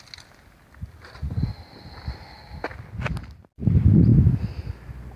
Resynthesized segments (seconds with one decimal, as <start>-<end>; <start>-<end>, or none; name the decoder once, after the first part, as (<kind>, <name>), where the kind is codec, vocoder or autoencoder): none